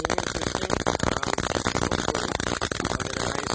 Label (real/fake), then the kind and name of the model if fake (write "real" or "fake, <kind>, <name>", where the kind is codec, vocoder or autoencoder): fake, vocoder, BigVGAN v2